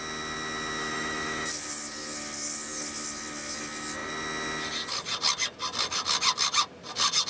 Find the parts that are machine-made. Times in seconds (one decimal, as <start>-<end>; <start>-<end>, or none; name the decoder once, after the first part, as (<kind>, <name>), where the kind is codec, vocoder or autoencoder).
0.8-1.5 (autoencoder, DAC-VAE)